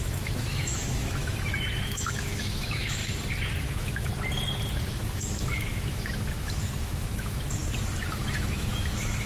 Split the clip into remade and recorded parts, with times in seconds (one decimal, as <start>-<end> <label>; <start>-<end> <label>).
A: 0.0-3.0 remade; 3.0-3.6 recorded; 3.6-4.1 remade; 4.1-4.7 recorded; 4.7-7.6 remade; 7.6-8.1 recorded; 8.1-9.3 remade